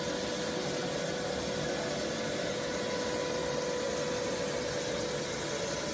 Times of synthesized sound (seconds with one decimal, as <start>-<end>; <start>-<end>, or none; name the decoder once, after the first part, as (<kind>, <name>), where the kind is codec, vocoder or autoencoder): none

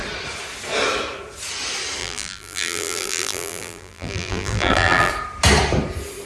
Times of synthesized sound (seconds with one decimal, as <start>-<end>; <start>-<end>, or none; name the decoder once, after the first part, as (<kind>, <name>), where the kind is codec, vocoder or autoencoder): 2.0-5.1 (vocoder, BigVGAN v2)

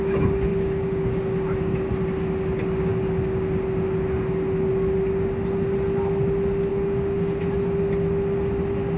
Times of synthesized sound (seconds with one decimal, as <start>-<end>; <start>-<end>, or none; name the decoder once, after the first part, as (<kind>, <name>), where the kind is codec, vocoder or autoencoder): 0.5-1.9 (codec, DAC); 6.7-7.4

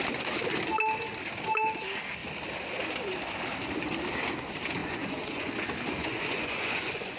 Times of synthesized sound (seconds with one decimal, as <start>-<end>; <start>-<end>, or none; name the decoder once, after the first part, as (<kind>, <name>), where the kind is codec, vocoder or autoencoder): 4.8-5.5 (vocoder, Vocos); 6.0-7.2

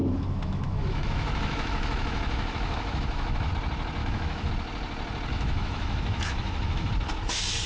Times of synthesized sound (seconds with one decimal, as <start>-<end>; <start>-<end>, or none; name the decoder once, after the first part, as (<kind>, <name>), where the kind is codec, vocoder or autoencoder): 0.0-3.5 (autoencoder, DAC-VAE); 4.0-4.5; 5.3-6.9

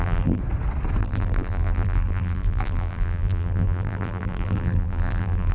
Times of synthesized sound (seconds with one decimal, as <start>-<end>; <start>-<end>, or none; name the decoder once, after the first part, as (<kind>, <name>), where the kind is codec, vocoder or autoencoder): 0.0-0.4 (vocoder, BigVGAN v2); 1.0-5.5

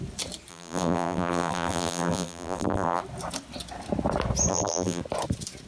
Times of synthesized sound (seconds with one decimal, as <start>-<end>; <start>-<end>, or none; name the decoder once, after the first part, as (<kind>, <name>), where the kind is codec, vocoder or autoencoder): 0.5-3.0 (vocoder, BigVGAN v2); 4.5-5.0

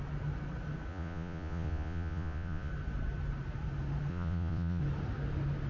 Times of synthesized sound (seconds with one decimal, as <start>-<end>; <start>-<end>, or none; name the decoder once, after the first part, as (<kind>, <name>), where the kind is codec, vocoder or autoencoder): 0.9-2.7 (vocoder, Vocos); 4.1-4.8